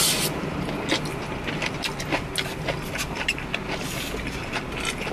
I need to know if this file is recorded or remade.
recorded